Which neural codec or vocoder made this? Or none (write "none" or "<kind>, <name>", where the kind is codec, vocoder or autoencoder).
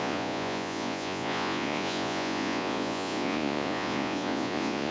vocoder, Vocos